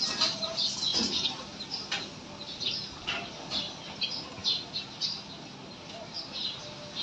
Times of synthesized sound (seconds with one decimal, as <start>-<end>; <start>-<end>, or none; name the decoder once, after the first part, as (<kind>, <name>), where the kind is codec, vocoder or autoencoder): 0.9-1.6 (vocoder, BigVGAN v2)